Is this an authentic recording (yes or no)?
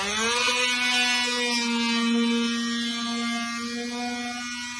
yes